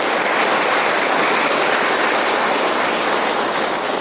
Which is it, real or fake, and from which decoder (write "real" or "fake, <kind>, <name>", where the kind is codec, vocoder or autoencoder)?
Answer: real